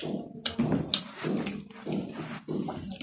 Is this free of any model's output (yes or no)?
yes